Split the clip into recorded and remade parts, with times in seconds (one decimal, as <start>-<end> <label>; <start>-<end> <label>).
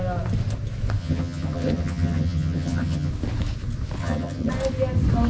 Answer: 0.0-1.0 recorded; 1.0-3.1 remade; 3.1-4.0 recorded; 4.0-4.5 remade; 4.5-5.3 recorded